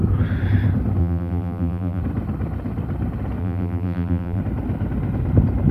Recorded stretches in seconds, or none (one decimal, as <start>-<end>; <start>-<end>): 0.0-1.0; 2.0-3.4; 4.4-5.7